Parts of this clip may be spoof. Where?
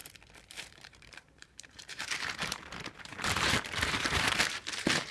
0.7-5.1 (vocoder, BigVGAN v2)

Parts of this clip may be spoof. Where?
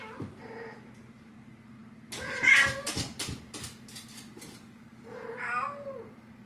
none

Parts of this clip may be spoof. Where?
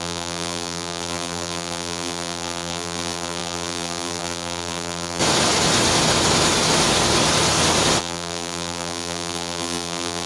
0.0-5.2 (vocoder, BigVGAN v2); 8.0-10.3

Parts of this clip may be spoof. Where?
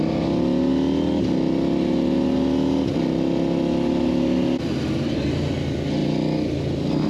none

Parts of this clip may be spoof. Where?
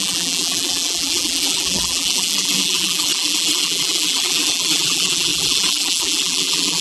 0.0-6.8 (vocoder, BigVGAN v2)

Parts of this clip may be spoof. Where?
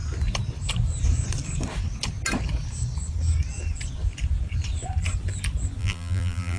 5.8-6.6 (vocoder, BigVGAN v2)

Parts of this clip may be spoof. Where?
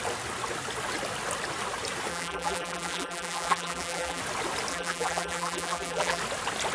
2.1-4.2 (vocoder, BigVGAN v2); 4.7-6.2